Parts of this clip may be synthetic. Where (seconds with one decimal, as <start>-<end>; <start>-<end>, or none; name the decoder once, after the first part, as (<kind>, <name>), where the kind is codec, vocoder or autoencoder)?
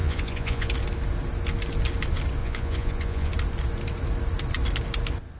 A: 0.0-0.7 (vocoder, Vocos); 2.4-3.3